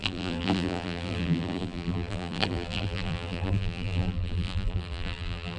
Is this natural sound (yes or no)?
no